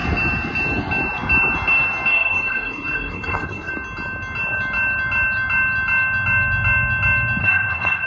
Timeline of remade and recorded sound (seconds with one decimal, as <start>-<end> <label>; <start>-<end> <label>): 0.0-2.1 recorded; 2.1-3.7 remade; 3.7-7.4 recorded; 7.4-8.1 remade